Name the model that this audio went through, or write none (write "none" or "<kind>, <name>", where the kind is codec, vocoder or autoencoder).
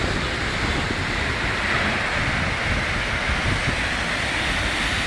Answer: none